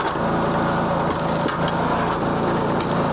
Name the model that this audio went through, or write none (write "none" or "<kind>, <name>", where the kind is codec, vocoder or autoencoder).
none